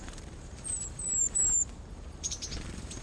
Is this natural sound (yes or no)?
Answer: no